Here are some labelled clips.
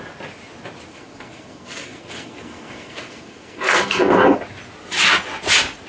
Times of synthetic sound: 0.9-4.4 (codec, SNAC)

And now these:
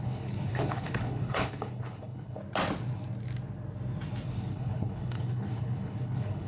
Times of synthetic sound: 0.0-2.4 (codec, HILCodec); 4.3-6.5